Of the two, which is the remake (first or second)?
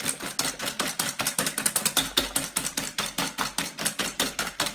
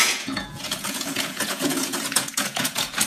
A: second